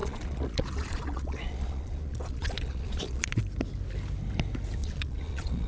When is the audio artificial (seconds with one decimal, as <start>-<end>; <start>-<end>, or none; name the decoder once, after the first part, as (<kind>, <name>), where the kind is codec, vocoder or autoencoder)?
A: 0.0-3.4 (vocoder, Vocos); 4.8-5.7